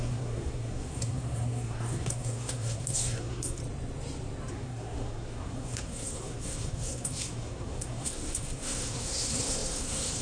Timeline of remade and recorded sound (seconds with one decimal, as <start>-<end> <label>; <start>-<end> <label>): 0.0-3.6 remade; 3.6-4.5 recorded; 4.5-10.2 remade